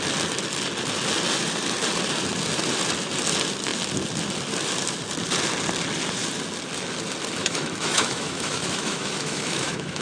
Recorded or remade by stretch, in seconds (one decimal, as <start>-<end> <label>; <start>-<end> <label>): 0.0-7.4 recorded; 7.4-10.0 remade